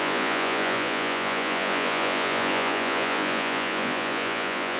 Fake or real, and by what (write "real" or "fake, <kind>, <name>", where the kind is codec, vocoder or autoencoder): fake, vocoder, Vocos